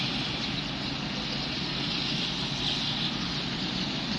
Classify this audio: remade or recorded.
recorded